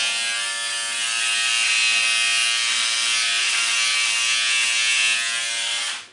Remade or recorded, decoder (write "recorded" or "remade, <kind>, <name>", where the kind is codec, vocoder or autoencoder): recorded